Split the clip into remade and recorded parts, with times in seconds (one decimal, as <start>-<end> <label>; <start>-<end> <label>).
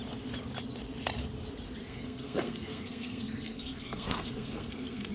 0.0-1.8 recorded; 1.8-5.1 remade